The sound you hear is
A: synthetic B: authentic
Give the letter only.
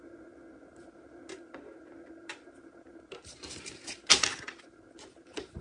B